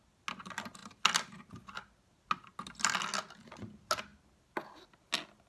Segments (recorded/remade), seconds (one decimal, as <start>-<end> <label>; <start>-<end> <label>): 0.0-5.5 recorded